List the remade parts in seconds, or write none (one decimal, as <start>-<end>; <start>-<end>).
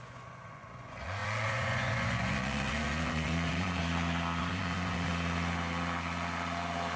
0.0-3.8; 4.4-5.1